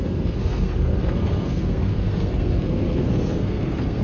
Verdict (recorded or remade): remade